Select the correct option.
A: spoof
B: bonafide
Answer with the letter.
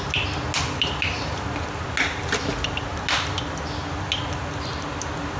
B